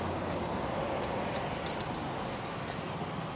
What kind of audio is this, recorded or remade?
recorded